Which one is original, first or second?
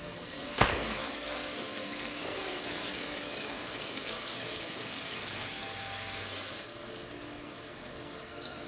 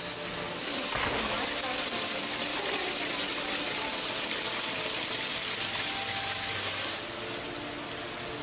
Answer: second